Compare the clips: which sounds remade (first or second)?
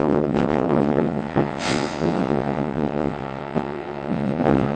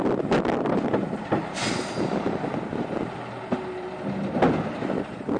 first